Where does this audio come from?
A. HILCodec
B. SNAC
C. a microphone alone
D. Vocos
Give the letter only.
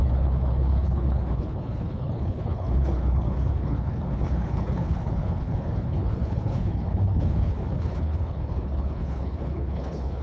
A